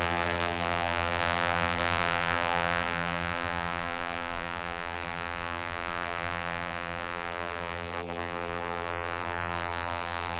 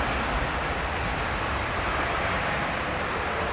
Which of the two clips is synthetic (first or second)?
first